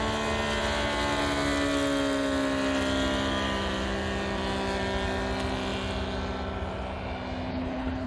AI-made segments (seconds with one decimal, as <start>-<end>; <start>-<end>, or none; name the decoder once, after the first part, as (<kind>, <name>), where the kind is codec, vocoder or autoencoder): 7.5-8.1 (codec, HILCodec)